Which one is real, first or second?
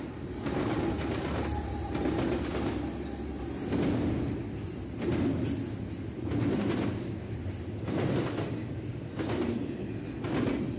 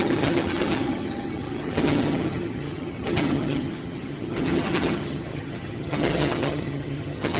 first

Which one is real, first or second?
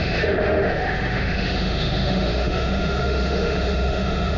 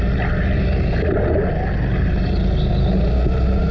second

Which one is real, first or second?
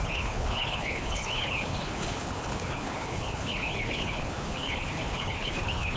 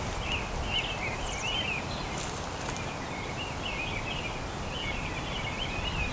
second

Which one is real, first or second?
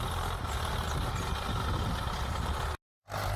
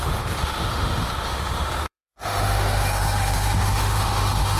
first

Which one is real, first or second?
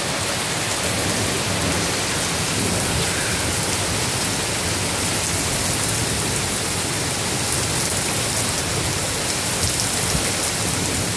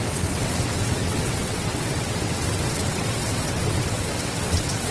first